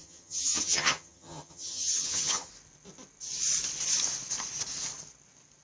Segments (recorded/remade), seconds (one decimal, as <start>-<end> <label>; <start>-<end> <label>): 0.0-2.5 remade; 2.5-5.6 recorded